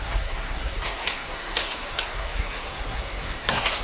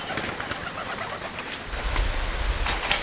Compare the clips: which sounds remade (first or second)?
first